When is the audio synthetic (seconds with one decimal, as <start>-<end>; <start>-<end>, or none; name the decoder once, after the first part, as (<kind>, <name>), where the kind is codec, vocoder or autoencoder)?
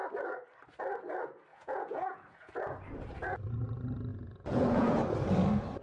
1.5-2.5 (vocoder, Vocos); 4.1-5.0